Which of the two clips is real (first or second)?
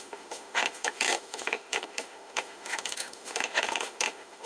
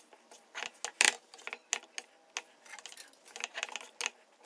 second